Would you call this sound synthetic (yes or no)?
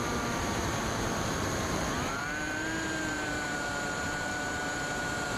yes